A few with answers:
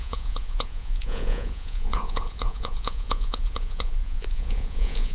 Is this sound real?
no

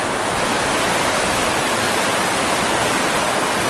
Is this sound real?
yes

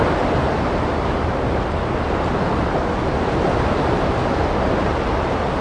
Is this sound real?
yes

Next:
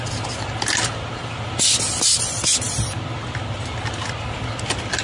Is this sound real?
yes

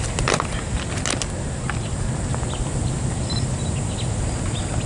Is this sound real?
yes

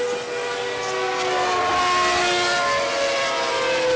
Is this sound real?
yes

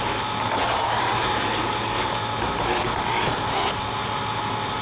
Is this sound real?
yes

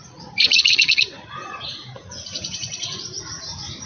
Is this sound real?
no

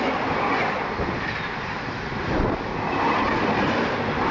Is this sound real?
yes